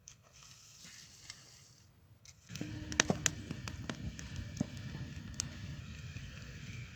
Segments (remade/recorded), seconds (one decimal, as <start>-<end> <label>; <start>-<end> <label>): 0.0-0.8 remade; 0.8-2.2 recorded; 2.2-2.7 remade; 2.7-5.8 recorded; 5.8-7.0 remade